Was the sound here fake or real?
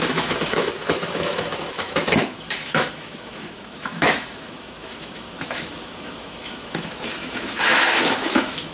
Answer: fake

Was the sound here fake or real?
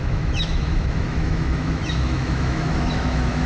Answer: fake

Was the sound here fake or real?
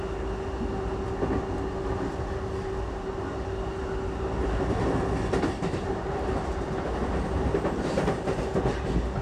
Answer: real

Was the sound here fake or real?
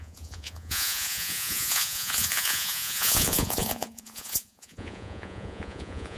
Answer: fake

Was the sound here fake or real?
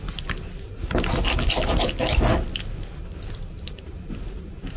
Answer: real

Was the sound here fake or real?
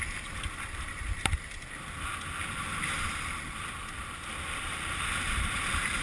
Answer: fake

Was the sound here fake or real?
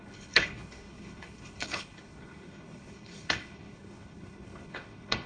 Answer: fake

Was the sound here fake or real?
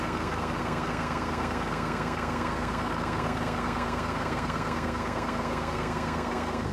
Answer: fake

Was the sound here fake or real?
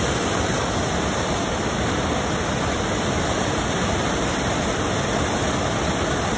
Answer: real